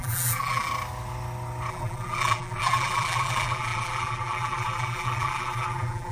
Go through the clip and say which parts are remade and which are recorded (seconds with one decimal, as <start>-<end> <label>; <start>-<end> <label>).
0.0-0.7 remade; 0.7-1.7 recorded; 1.7-6.1 remade